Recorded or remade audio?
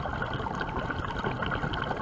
recorded